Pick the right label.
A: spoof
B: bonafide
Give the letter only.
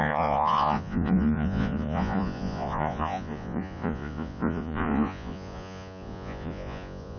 A